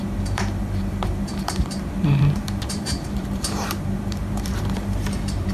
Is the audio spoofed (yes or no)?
yes